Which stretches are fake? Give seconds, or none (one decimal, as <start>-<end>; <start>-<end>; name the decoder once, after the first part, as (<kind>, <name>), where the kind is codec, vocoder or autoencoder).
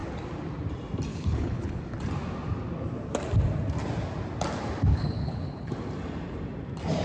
1.1-1.8 (codec, HILCodec); 4.9-5.7